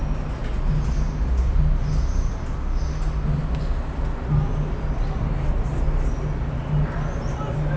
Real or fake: real